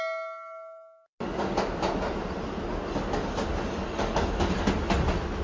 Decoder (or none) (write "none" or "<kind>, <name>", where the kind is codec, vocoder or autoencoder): none